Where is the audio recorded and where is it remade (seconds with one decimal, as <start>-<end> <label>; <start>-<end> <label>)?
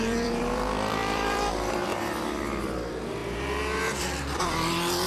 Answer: 0.0-1.9 remade; 1.9-2.6 recorded; 2.6-3.2 remade; 3.2-4.0 recorded; 4.0-5.1 remade